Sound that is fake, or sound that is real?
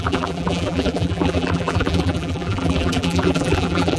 fake